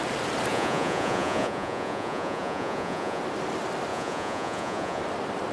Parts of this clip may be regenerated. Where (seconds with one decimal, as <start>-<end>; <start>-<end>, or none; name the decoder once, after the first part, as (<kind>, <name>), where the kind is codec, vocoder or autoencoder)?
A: 0.5-3.2 (vocoder, Vocos); 3.9-5.0